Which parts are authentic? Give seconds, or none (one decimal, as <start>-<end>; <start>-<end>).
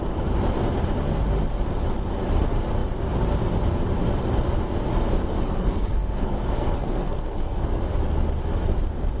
0.0-5.2; 7.8-9.2